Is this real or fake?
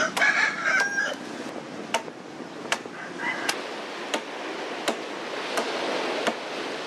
real